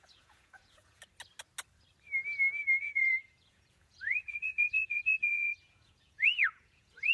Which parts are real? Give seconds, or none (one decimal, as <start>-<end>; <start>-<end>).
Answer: 1.0-2.8